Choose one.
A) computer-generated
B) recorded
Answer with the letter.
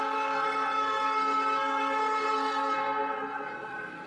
A